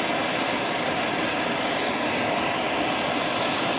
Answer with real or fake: real